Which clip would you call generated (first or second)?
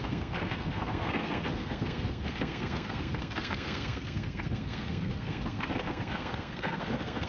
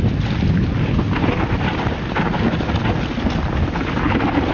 first